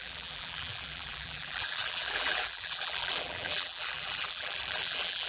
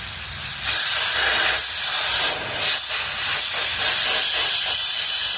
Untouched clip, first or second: second